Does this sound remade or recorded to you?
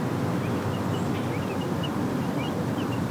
recorded